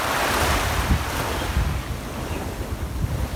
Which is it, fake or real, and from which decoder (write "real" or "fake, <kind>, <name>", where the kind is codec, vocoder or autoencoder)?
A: real